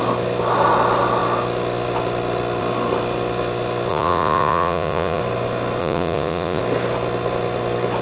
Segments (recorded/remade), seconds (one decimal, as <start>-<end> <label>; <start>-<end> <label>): 0.0-3.9 recorded; 3.9-5.2 remade; 5.2-5.8 recorded; 5.8-6.6 remade; 6.6-8.0 recorded